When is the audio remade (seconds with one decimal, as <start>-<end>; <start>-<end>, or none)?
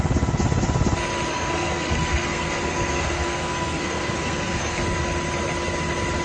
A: 1.3-4.8